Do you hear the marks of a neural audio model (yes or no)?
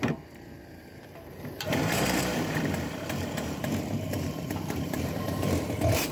yes